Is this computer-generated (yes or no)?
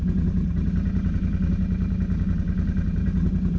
no